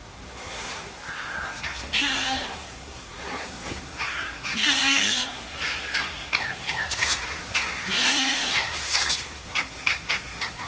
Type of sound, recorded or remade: remade